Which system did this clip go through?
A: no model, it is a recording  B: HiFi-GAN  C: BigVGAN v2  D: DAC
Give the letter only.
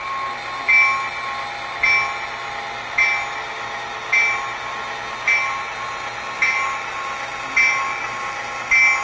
A